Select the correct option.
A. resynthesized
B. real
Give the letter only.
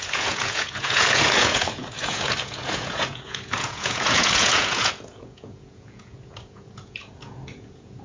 A